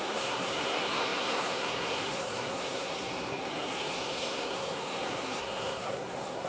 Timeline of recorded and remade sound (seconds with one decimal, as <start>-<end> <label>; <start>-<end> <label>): 0.0-6.5 remade